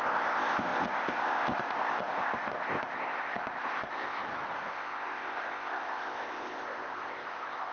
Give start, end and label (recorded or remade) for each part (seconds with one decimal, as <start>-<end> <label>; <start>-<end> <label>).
0.0-4.2 remade; 4.2-4.7 recorded; 4.7-7.7 remade